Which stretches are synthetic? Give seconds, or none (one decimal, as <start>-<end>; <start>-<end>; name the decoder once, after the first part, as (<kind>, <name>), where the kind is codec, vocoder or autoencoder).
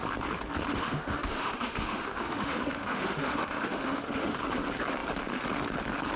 0.7-4.4 (autoencoder, DAC-VAE)